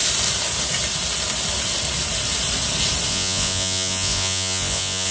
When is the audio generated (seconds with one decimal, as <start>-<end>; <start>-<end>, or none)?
3.1-5.1